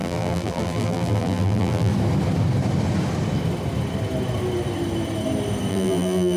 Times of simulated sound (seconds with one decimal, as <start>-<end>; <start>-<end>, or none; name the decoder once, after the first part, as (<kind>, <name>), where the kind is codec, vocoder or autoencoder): 0.0-1.9 (vocoder, BigVGAN v2); 5.7-6.4